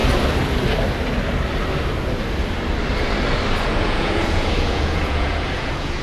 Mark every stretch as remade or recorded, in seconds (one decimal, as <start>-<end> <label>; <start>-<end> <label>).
0.0-3.6 recorded; 3.6-6.0 remade